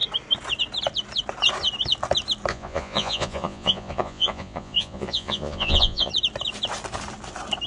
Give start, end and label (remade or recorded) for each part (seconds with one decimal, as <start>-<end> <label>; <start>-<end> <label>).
0.0-2.5 recorded; 2.5-6.1 remade; 6.1-7.7 recorded